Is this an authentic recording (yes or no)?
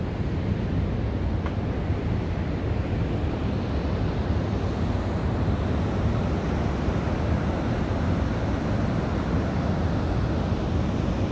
yes